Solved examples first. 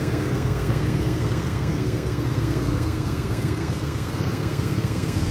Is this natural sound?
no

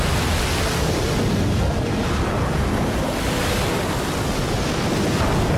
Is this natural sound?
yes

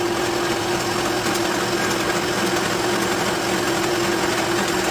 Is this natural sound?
yes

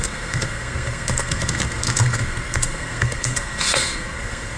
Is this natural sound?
no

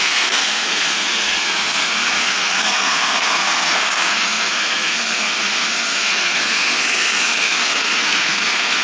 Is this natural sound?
no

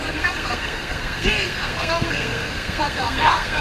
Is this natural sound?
no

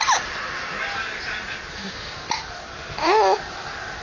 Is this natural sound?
yes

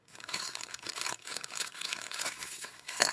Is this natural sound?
no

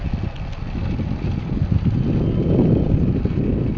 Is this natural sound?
yes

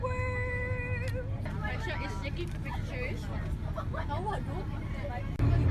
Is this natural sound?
yes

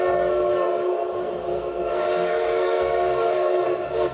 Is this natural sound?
no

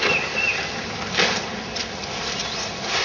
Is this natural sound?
yes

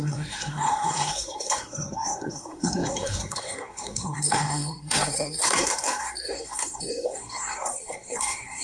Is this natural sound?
no